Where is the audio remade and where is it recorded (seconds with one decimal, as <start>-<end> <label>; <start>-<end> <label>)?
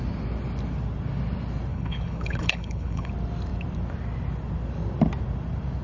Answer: 0.0-1.7 recorded; 1.7-3.1 remade; 3.1-5.8 recorded